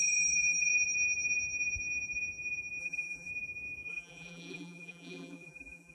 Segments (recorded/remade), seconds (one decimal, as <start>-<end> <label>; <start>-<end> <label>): 0.0-0.7 remade; 0.7-2.8 recorded; 2.8-3.3 remade; 3.3-3.9 recorded; 3.9-5.9 remade